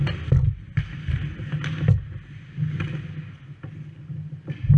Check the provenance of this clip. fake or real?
real